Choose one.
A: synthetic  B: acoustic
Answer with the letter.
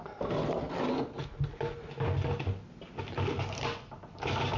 B